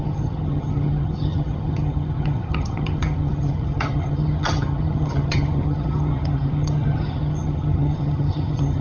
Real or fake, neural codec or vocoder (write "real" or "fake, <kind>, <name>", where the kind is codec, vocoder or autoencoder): fake, vocoder, HiFi-GAN